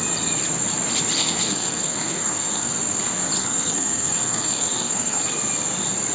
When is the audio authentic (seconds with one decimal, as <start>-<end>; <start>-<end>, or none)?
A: 0.0-1.2; 2.7-3.4; 5.2-6.1